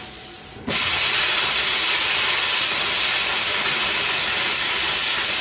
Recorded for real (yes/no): yes